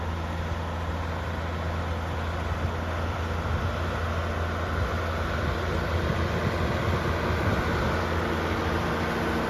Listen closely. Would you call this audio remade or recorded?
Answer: recorded